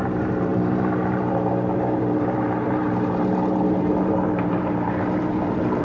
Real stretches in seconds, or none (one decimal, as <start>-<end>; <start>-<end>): none